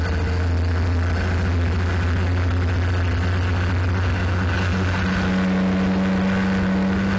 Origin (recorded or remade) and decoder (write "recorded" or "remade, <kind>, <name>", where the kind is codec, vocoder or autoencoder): recorded